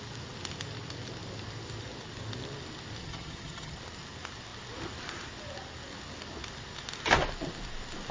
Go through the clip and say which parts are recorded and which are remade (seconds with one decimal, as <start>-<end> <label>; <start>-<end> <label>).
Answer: 0.0-3.0 recorded; 3.0-3.8 remade; 3.8-8.1 recorded